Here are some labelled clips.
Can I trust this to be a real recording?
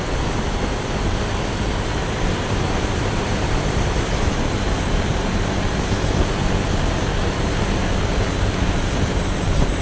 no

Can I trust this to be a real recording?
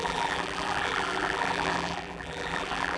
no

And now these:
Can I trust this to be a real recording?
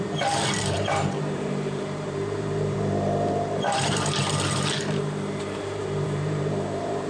no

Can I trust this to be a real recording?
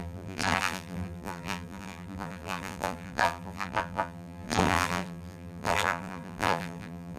no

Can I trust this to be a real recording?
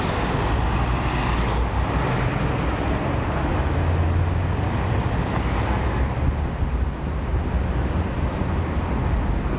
yes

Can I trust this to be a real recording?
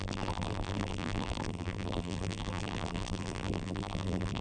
no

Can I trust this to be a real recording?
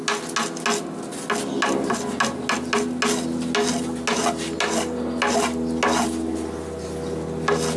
yes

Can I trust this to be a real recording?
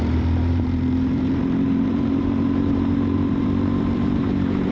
no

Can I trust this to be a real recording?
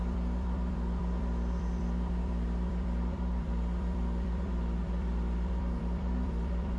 no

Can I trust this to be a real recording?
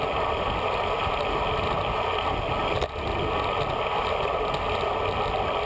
yes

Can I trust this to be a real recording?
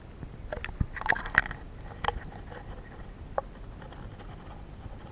yes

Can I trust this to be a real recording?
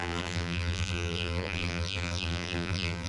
no